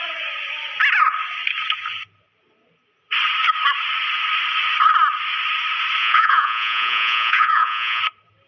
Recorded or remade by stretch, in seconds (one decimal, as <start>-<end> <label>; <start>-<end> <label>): 0.0-6.0 recorded; 6.0-8.0 remade; 8.0-8.5 recorded